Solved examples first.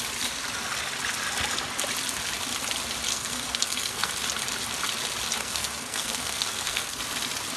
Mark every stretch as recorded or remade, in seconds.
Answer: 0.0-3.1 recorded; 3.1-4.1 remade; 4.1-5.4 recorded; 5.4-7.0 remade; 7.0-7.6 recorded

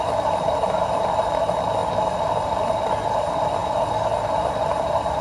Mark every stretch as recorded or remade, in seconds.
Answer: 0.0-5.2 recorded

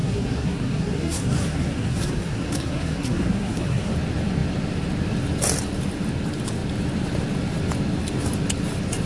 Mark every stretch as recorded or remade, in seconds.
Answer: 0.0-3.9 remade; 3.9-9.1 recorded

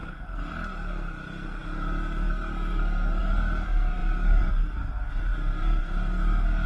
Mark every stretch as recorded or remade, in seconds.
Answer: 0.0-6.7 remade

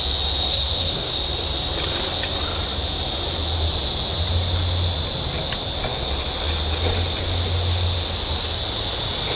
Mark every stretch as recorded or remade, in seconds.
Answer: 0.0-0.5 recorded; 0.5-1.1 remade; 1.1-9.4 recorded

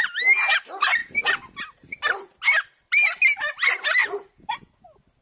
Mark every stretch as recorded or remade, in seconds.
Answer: 0.0-5.2 recorded

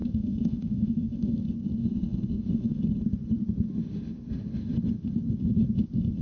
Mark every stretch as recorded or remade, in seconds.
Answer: 0.0-1.4 remade; 1.4-1.8 recorded; 1.8-2.8 remade; 2.8-6.2 recorded

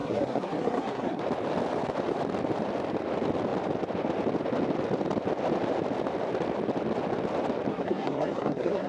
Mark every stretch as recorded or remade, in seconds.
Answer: 0.0-1.2 remade; 1.2-7.7 recorded; 7.7-8.9 remade